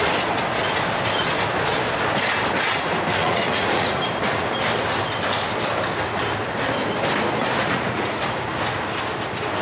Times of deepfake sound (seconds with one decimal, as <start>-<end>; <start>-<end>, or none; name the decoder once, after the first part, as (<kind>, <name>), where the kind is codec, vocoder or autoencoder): 3.2-4.0 (vocoder, Vocos); 7.6-8.2